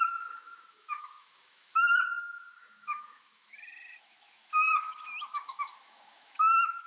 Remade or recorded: remade